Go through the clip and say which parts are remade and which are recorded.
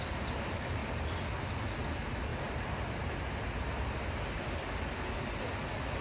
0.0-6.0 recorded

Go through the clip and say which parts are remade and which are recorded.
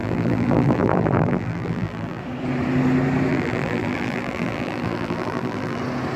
0.0-2.2 remade; 2.2-3.3 recorded; 3.3-5.8 remade; 5.8-6.2 recorded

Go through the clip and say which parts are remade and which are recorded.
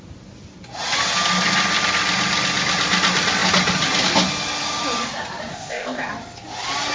0.0-5.5 recorded; 5.5-6.1 remade; 6.1-6.9 recorded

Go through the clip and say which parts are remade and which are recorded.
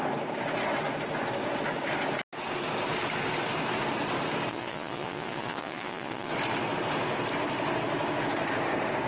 0.0-4.5 recorded; 4.5-6.3 remade; 6.3-9.1 recorded